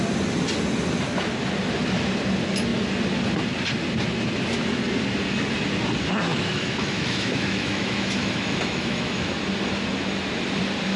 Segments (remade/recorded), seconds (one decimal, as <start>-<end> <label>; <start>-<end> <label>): 0.0-6.3 recorded; 6.3-9.3 remade; 9.3-11.0 recorded